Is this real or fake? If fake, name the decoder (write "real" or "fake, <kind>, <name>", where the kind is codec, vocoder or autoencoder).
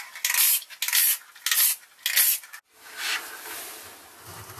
real